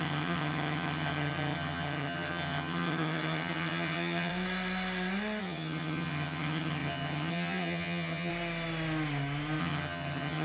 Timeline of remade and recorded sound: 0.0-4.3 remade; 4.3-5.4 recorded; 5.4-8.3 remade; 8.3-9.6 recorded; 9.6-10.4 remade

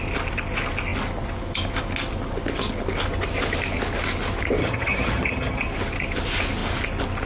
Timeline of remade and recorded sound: 0.0-4.6 recorded; 4.6-5.6 remade; 5.6-7.3 recorded

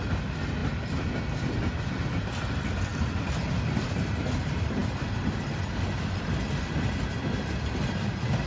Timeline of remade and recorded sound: 0.0-8.5 recorded

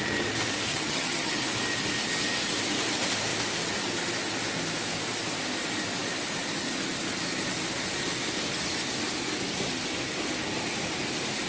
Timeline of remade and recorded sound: 0.0-0.7 recorded; 0.7-1.4 remade; 1.4-11.5 recorded